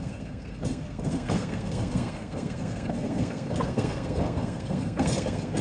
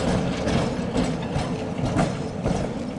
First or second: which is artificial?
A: first